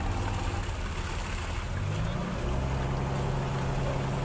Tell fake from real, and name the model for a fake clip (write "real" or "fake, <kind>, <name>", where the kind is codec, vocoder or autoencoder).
real